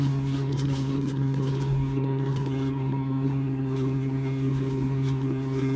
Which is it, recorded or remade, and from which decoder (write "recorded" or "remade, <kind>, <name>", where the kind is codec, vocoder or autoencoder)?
remade, codec, SNAC